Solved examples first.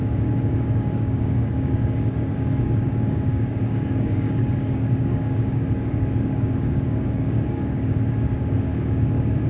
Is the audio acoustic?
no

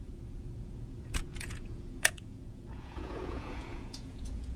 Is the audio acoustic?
no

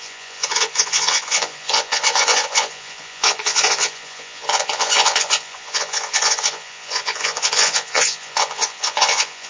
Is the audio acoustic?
no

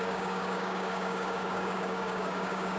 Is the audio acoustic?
no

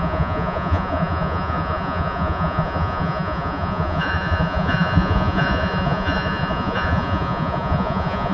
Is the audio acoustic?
no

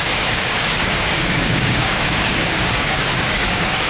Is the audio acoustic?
no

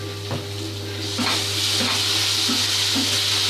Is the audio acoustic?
yes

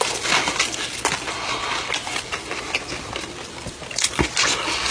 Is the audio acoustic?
yes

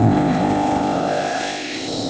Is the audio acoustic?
no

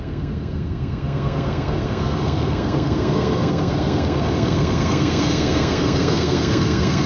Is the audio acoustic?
no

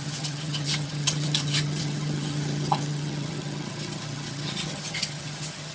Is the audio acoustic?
no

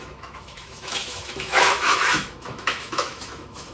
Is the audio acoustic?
no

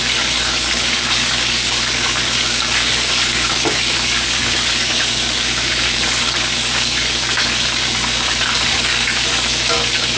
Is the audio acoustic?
no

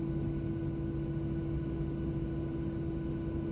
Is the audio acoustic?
yes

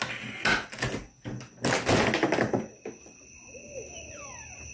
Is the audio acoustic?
yes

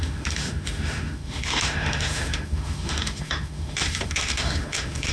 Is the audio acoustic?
no